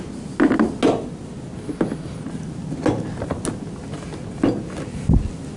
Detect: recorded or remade recorded